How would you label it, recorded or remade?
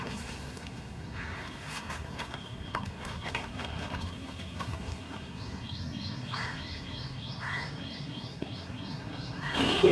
remade